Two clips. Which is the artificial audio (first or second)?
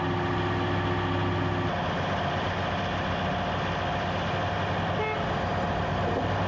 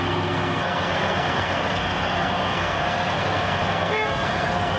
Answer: second